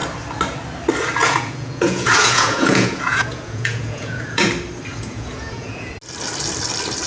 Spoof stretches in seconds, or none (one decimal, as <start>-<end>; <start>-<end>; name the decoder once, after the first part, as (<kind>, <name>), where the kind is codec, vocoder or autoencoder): 1.2-4.5 (vocoder, Vocos); 4.9-5.9

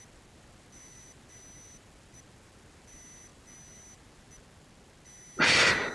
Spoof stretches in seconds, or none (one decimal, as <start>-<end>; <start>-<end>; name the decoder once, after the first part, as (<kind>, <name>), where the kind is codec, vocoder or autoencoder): none

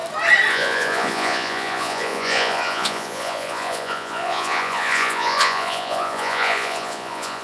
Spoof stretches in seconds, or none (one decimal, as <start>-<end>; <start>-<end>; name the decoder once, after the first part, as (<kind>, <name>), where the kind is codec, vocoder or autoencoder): 0.5-7.4 (vocoder, Vocos)

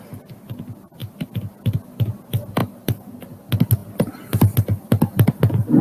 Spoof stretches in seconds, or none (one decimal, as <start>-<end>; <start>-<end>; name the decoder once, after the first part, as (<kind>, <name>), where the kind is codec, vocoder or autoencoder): none